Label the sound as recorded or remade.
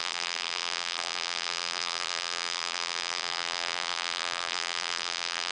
remade